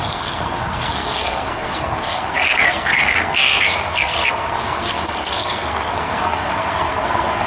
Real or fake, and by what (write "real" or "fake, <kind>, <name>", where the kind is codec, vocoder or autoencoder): fake, codec, SNAC